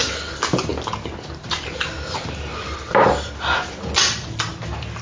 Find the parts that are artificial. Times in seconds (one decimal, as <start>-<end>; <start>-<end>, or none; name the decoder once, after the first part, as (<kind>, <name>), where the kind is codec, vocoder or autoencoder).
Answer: none